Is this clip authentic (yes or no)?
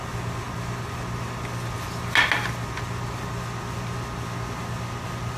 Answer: yes